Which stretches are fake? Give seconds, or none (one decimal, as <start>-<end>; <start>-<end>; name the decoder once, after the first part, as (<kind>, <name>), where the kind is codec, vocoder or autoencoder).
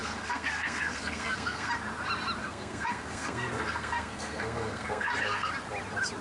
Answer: 0.0-1.7 (codec, SNAC); 2.4-5.5